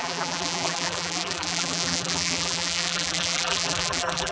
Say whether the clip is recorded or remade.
remade